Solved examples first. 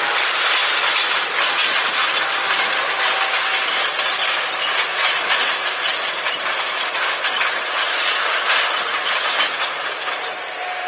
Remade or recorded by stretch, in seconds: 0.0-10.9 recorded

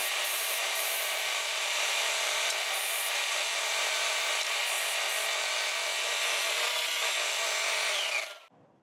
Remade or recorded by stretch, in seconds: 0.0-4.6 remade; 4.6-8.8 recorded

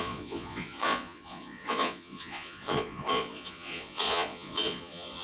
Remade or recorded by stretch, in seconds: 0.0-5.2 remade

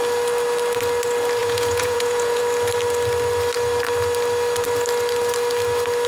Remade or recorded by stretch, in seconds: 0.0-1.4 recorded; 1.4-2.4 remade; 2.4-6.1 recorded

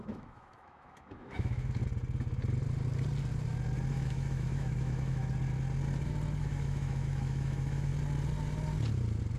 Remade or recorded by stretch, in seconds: 0.0-1.8 remade; 1.8-3.9 recorded; 3.9-5.2 remade; 5.2-6.4 recorded; 6.4-7.9 remade; 7.9-9.4 recorded

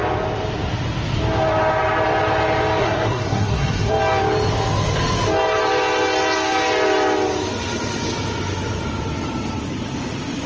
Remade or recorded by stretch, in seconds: 0.0-2.8 recorded; 2.8-3.9 remade; 3.9-10.5 recorded

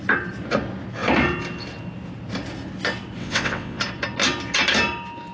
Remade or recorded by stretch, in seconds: 0.0-3.2 recorded; 3.2-3.8 remade; 3.8-5.3 recorded

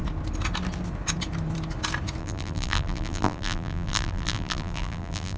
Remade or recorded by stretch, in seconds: 0.0-2.2 recorded; 2.2-5.4 remade